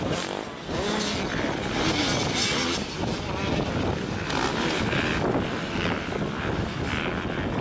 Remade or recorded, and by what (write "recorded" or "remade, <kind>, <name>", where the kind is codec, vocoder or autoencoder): recorded